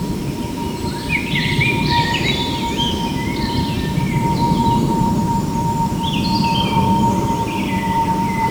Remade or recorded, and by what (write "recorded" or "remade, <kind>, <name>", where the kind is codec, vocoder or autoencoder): remade, vocoder, BigVGAN v2